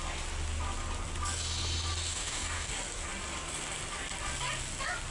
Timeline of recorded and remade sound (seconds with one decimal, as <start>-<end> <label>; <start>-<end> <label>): 0.0-2.1 recorded; 2.1-2.7 remade; 2.7-5.1 recorded